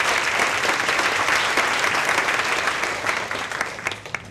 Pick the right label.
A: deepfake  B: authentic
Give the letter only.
A